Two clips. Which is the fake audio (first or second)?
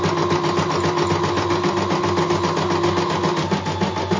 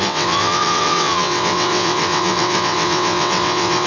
second